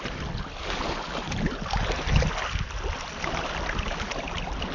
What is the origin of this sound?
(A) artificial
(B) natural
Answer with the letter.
B